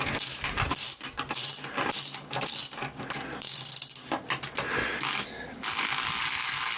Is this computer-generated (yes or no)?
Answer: no